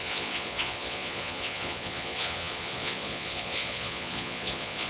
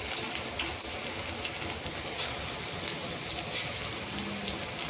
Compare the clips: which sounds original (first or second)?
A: second